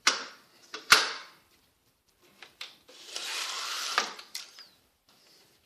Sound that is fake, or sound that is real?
fake